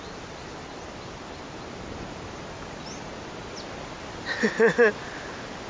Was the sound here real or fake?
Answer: real